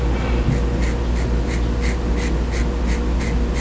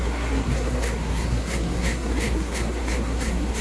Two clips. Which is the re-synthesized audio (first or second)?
second